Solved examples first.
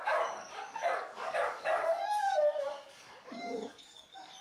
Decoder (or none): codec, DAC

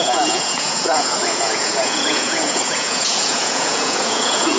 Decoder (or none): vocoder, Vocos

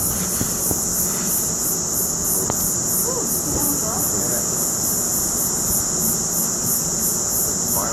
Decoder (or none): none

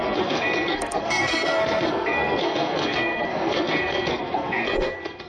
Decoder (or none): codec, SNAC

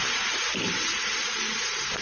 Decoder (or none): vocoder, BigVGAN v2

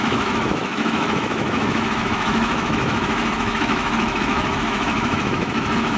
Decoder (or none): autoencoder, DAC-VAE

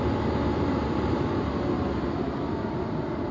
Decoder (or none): none